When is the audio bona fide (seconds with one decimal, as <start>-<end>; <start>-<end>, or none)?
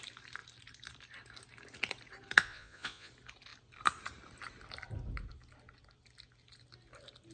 0.0-2.4; 3.1-7.3